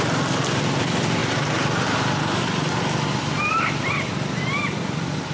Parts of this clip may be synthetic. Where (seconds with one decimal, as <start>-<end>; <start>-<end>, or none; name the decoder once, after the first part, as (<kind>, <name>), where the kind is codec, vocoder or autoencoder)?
none